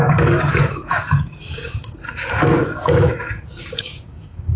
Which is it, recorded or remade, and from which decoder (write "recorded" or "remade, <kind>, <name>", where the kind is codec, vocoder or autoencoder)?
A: remade, codec, DAC